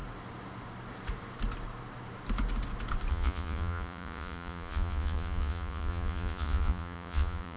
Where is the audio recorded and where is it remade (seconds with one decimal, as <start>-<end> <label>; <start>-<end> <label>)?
0.0-3.1 recorded; 3.1-7.6 remade